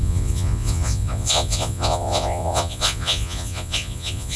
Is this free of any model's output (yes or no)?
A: no